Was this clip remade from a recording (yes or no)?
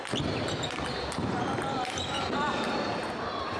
no